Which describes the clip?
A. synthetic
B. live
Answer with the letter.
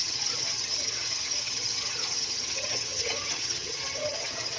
A